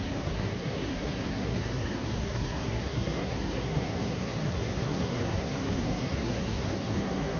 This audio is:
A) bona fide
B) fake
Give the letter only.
B